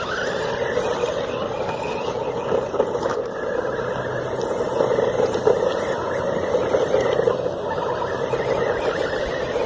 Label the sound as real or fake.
real